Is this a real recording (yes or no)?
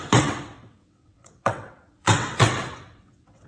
no